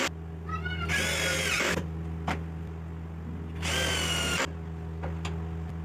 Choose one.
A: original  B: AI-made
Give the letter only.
A